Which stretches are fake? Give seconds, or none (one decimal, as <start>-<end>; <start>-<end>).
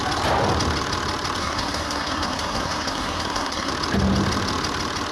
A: 1.4-3.7